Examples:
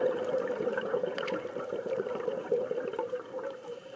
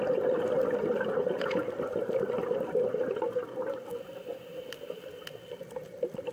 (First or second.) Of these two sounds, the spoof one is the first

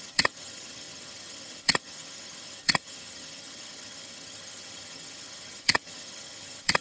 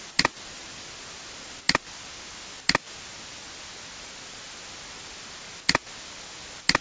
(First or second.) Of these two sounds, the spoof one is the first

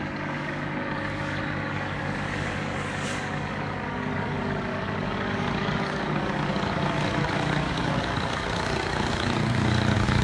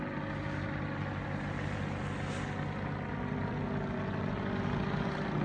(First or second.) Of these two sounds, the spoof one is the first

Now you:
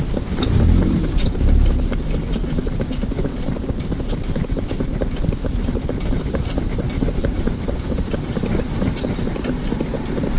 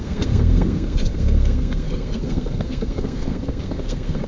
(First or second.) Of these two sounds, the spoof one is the second